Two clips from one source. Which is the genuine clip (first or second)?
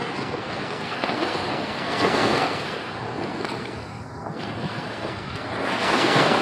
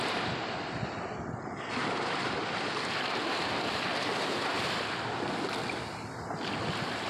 second